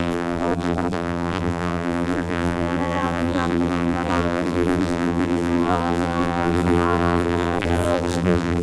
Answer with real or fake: fake